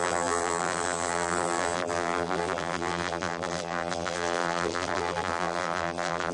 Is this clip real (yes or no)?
no